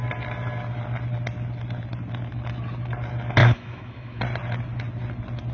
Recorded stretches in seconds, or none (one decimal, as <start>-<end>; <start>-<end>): 0.0-3.4; 4.2-5.5